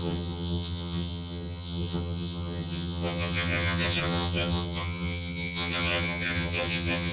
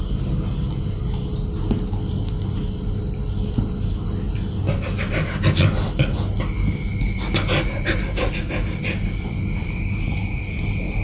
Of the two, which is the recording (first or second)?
second